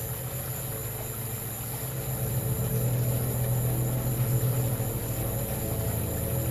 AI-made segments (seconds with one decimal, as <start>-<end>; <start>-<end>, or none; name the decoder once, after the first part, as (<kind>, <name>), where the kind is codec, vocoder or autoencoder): none